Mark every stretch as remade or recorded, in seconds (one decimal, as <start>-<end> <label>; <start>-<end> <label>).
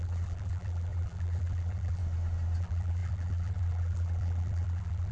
0.0-2.0 remade; 2.0-2.6 recorded; 2.6-5.1 remade